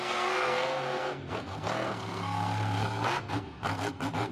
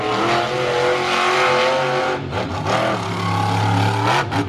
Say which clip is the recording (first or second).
second